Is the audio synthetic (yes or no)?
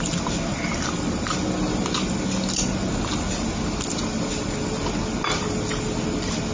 no